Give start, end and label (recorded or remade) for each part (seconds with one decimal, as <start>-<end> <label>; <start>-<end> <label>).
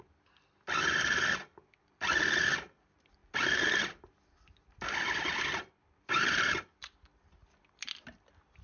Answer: 0.0-8.6 remade